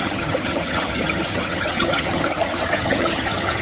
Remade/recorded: remade